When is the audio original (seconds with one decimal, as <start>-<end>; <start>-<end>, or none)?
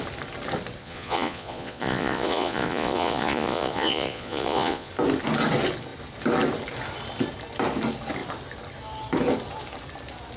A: 0.0-0.8; 4.9-10.4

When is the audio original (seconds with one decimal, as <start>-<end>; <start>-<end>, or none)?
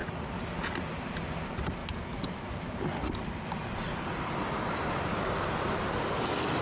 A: 0.0-6.6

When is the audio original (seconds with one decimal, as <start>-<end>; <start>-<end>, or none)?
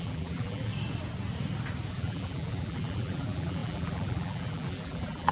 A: 0.7-1.9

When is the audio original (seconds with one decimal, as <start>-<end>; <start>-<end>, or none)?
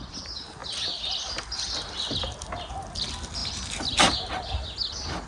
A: 0.0-5.3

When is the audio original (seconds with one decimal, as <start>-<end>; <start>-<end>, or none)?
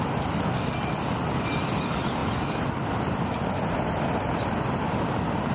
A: 0.0-5.5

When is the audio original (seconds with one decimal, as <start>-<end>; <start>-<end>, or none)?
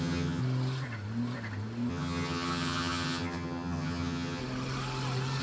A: 0.4-1.9; 4.4-5.4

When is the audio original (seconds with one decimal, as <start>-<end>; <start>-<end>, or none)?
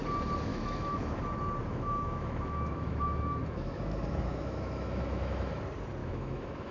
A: 0.0-0.5; 1.2-1.6; 5.6-6.0